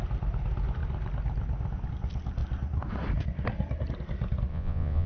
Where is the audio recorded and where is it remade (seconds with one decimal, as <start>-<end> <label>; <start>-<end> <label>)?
0.0-4.5 recorded; 4.5-5.1 remade